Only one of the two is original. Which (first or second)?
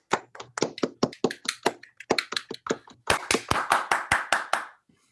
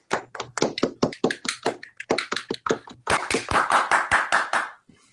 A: first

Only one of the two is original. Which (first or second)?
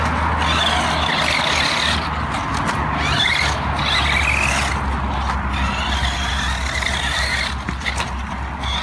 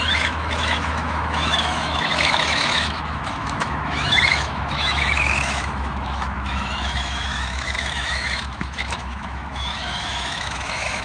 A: first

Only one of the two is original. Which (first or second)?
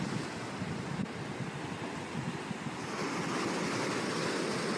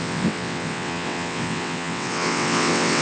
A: first